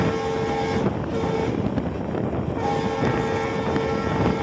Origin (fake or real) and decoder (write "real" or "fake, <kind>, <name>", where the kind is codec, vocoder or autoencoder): real